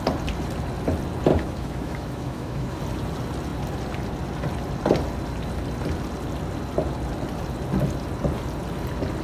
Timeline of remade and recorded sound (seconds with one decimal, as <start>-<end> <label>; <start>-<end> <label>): 0.0-1.3 recorded; 1.3-2.8 remade; 2.8-9.2 recorded